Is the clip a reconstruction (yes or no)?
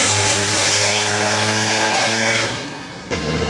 yes